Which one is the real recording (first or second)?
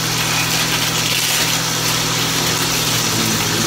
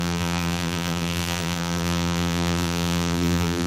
first